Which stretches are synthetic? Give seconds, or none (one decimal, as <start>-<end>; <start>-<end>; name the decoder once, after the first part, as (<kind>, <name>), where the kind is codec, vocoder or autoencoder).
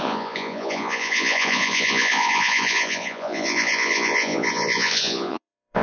0.0-5.8 (vocoder, Vocos)